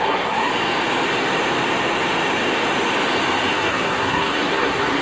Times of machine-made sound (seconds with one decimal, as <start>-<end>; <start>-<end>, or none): 0.0-0.5; 3.5-5.0